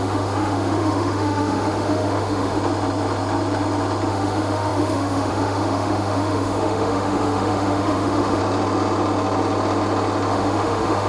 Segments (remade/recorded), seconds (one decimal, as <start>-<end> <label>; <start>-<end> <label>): 0.0-2.6 remade; 2.6-4.1 recorded; 4.1-8.4 remade; 8.4-10.3 recorded; 10.3-11.1 remade